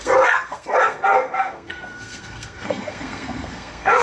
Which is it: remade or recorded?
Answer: remade